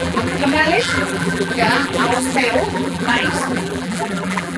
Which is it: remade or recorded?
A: remade